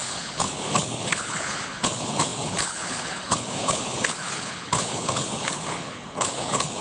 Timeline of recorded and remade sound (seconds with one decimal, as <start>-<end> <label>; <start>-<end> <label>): 0.0-6.8 remade